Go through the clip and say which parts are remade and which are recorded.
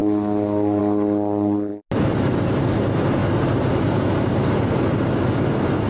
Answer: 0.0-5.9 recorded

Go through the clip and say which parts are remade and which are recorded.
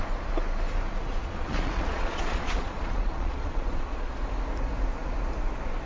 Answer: 0.0-1.2 recorded; 1.2-4.1 remade; 4.1-5.9 recorded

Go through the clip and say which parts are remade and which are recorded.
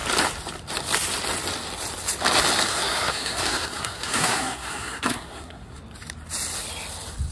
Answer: 0.0-2.7 recorded; 2.7-5.8 remade; 5.8-7.3 recorded